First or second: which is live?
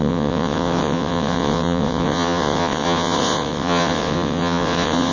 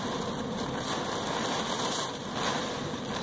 second